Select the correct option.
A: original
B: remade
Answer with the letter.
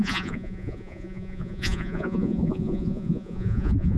B